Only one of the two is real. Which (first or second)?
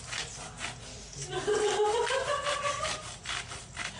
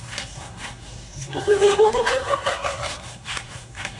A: first